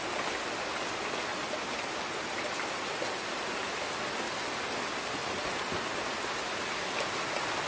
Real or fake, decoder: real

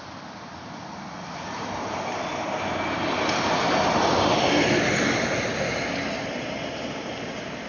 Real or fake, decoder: real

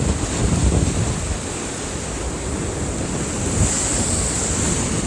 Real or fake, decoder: real